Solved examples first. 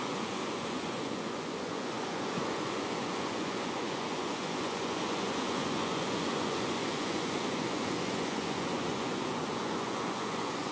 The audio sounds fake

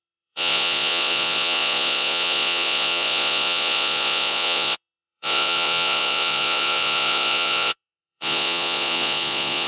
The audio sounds fake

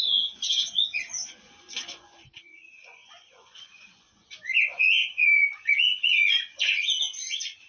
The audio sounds fake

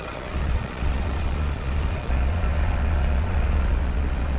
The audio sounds fake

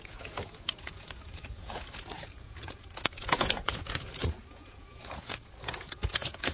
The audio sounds fake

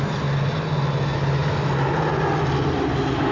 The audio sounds real